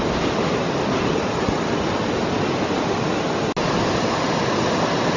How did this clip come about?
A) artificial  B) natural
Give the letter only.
B